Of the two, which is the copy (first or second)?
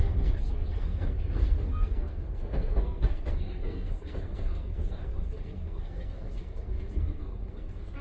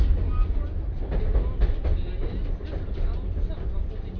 first